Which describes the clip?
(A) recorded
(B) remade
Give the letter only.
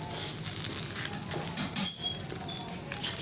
A